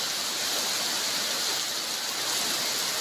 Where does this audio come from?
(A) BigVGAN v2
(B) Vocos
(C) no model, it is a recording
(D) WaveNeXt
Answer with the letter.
C